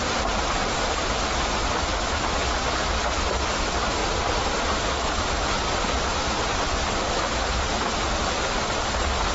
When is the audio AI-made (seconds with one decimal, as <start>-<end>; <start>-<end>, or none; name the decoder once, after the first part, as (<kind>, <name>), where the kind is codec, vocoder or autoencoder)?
4.0-7.0 (vocoder, BigVGAN v2)